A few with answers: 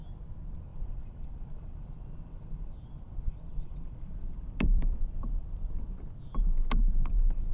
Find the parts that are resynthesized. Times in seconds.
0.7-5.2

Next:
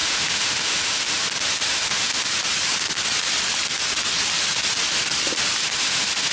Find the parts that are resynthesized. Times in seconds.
0.0-1.2; 1.7-2.3; 5.6-6.3

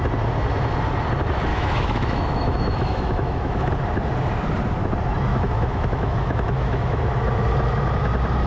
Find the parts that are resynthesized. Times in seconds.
1.5-3.7; 5.3-7.0

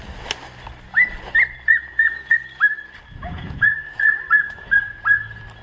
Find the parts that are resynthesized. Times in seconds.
1.7-2.6; 3.2-5.0

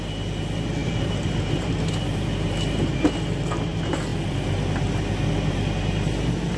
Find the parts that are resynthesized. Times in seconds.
0.8-1.9

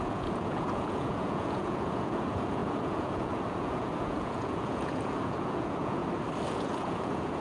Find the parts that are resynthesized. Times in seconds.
0.0-6.0; 6.5-7.4

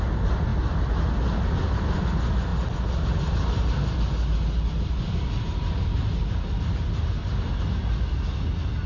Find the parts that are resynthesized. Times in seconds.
none